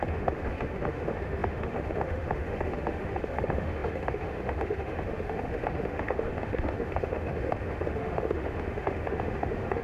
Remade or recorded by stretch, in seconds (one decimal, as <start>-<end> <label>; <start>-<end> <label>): 0.0-9.8 remade